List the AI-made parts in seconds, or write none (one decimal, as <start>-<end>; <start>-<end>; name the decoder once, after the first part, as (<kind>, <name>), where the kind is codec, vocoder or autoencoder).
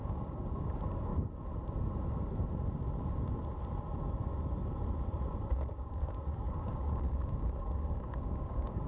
0.0-1.1 (codec, DAC); 5.4-8.9